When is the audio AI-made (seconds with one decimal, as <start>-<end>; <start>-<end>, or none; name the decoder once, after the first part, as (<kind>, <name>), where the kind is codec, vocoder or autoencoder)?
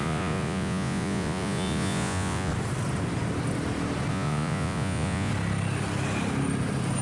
0.0-2.5 (vocoder, Vocos); 4.1-5.3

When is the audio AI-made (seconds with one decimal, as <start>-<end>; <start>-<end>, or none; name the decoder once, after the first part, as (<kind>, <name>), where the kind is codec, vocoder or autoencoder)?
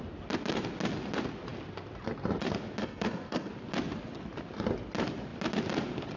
2.8-3.5 (codec, SNAC)